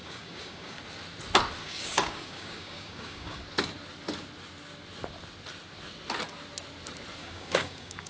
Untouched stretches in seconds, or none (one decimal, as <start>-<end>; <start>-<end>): 0.8-1.6; 3.4-7.2